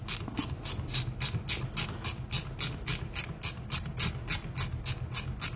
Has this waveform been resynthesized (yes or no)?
no